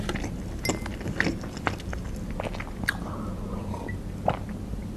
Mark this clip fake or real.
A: real